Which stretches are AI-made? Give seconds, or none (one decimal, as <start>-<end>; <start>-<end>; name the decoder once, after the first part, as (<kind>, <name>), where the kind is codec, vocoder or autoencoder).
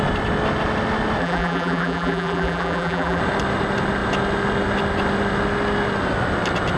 1.2-3.2 (vocoder, BigVGAN v2)